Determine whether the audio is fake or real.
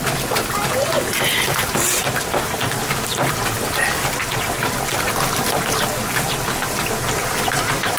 fake